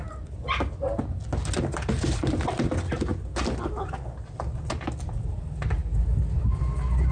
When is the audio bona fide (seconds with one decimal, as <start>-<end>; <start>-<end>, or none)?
0.0-7.1